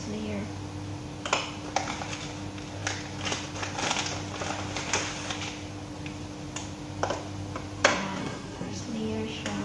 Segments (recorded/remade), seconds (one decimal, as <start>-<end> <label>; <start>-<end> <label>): 0.0-8.2 recorded; 8.2-8.8 remade; 8.8-9.6 recorded